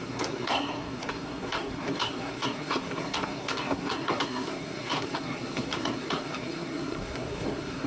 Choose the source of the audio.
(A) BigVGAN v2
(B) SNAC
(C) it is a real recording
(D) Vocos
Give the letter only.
B